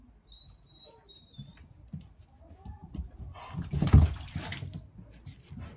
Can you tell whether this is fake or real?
real